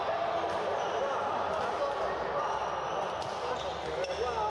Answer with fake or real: real